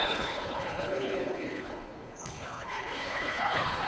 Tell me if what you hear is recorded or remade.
remade